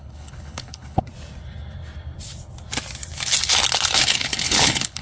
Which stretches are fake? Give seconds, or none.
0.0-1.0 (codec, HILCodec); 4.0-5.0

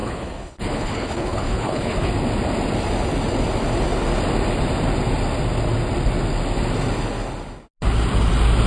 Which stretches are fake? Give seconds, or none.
0.0-2.1 (codec, HILCodec)

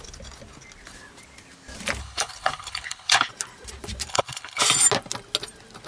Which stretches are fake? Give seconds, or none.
2.0-3.3 (codec, HILCodec); 4.1-4.6

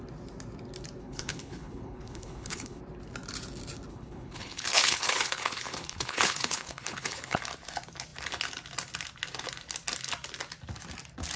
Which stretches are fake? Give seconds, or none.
1.0-2.8 (codec, HILCodec); 3.9-7.4